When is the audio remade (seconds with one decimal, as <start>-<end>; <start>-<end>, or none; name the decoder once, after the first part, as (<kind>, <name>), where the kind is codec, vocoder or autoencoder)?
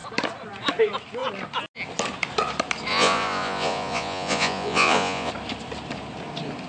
2.9-5.3 (vocoder, Vocos)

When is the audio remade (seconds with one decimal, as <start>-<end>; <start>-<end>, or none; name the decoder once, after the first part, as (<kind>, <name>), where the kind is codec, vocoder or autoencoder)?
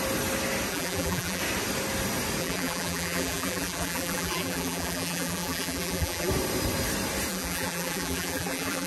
0.7-1.4 (vocoder, BigVGAN v2); 2.4-6.3; 7.3-8.9